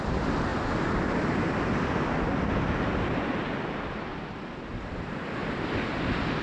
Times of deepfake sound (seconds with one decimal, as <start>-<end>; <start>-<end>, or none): 0.5-1.1; 5.4-6.0